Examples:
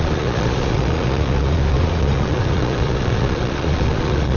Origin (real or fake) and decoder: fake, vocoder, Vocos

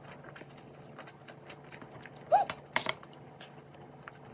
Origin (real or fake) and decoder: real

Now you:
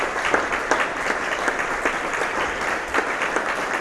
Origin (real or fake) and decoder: fake, vocoder, BigVGAN v2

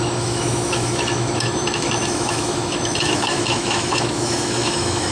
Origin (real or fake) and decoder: fake, autoencoder, DAC-VAE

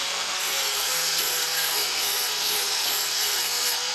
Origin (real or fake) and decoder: fake, codec, SNAC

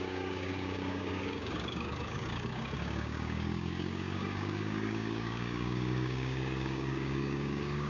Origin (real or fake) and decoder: fake, codec, DAC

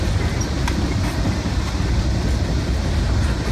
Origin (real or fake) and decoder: real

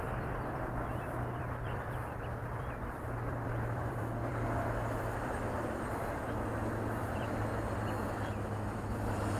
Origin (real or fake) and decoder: fake, vocoder, BigVGAN v2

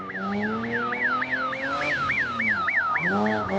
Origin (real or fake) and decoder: fake, codec, DAC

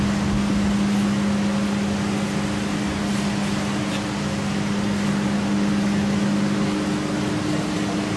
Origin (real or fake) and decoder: real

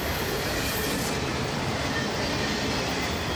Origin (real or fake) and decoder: real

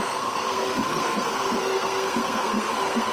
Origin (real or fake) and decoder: fake, codec, SNAC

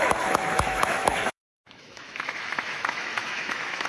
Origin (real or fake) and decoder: fake, autoencoder, DAC-VAE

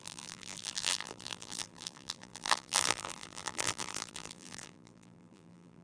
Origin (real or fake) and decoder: fake, vocoder, BigVGAN v2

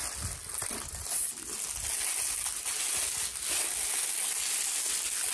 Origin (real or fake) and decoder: real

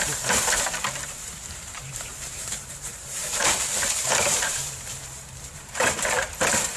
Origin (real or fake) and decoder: fake, vocoder, BigVGAN v2